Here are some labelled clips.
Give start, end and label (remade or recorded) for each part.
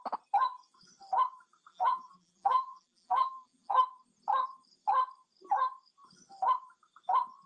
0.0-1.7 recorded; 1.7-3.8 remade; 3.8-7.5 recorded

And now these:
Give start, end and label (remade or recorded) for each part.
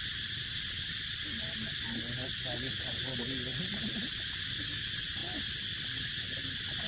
0.0-1.7 remade; 1.7-2.7 recorded; 2.7-6.9 remade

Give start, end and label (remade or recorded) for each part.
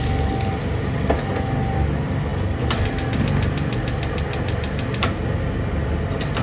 0.0-6.4 recorded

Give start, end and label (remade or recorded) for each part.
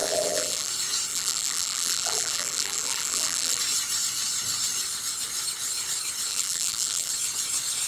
0.0-0.7 remade; 0.7-1.1 recorded; 1.1-3.6 remade; 3.6-6.3 recorded; 6.3-7.1 remade; 7.1-7.9 recorded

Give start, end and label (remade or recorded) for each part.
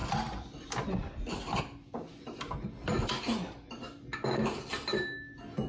0.0-1.6 remade; 1.6-5.7 recorded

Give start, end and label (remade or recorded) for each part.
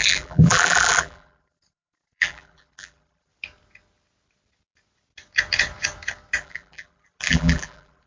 0.0-3.3 remade; 3.3-6.4 recorded; 6.4-8.1 remade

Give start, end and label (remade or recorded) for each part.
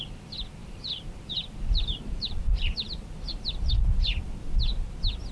0.0-0.6 recorded; 0.6-3.8 remade; 3.8-5.3 recorded